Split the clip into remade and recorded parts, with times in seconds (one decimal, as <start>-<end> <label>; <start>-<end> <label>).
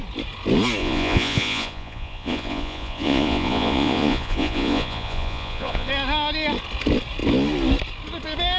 0.0-0.8 recorded; 0.8-5.9 remade; 5.9-8.6 recorded